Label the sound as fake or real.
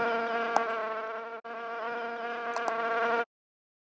real